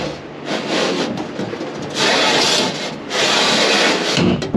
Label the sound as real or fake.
real